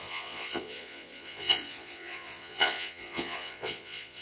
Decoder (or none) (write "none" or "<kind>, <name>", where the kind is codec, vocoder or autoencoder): vocoder, Vocos